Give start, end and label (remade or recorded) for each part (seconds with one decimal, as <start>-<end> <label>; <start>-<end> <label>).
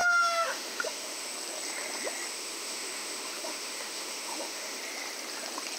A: 0.0-1.3 remade; 1.3-2.3 recorded; 2.3-4.8 remade; 4.8-5.8 recorded